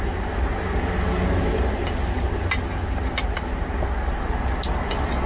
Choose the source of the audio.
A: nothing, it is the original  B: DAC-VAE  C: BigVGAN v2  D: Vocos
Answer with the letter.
A